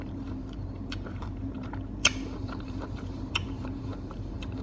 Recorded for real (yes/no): no